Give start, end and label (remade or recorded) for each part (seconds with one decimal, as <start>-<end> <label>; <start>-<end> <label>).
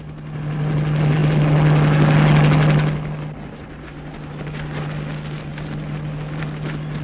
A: 0.0-7.0 recorded